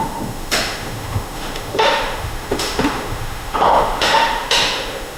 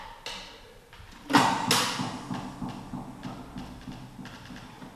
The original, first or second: second